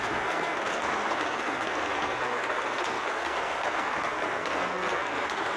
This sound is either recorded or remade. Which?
remade